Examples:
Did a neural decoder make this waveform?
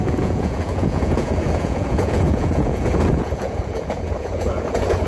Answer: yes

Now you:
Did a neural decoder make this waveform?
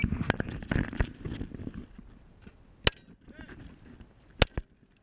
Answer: no